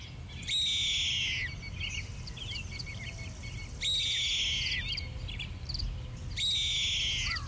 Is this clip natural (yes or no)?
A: yes